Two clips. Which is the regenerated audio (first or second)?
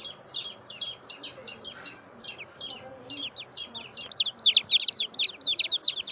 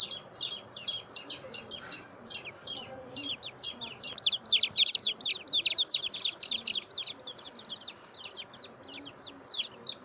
second